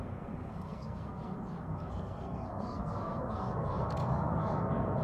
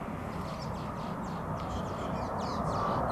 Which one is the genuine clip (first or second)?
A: second